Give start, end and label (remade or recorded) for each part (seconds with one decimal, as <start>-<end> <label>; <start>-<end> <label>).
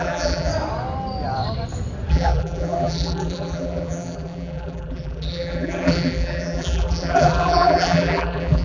0.0-0.5 remade; 0.5-2.1 recorded; 2.1-8.6 remade